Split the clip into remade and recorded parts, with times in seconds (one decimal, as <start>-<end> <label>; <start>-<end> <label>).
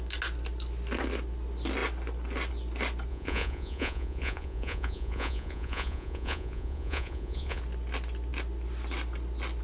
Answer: 0.0-3.1 recorded; 3.1-7.6 remade; 7.6-9.6 recorded